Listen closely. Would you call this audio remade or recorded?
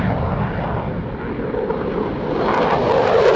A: recorded